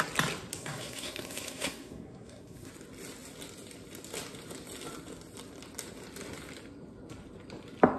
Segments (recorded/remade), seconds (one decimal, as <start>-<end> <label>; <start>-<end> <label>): 0.0-0.6 recorded; 0.6-2.7 remade; 2.7-8.0 recorded